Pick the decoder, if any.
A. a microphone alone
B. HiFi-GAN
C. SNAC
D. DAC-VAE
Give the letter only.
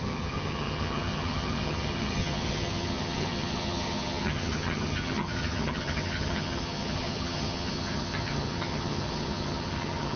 B